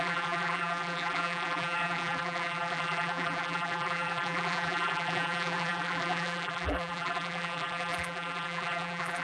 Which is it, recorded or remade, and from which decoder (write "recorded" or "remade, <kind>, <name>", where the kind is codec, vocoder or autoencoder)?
remade, vocoder, BigVGAN v2